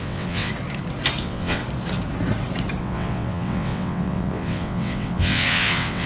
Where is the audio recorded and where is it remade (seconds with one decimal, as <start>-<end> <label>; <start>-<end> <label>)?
0.0-0.5 remade; 0.5-1.2 recorded; 1.2-1.6 remade; 1.6-2.8 recorded; 2.8-6.1 remade